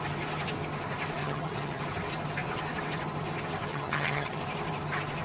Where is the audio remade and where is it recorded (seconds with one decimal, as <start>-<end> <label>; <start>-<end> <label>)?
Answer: 0.0-1.2 recorded; 1.2-1.8 remade; 1.8-3.7 recorded; 3.7-4.4 remade; 4.4-5.2 recorded